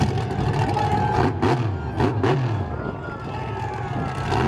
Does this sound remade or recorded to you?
recorded